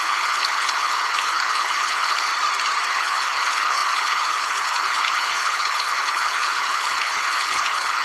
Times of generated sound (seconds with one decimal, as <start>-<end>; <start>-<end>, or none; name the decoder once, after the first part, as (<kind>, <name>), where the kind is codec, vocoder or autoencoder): 0.0-2.3 (codec, HILCodec); 2.9-8.0